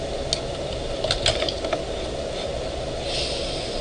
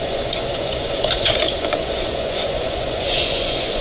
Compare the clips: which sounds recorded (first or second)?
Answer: first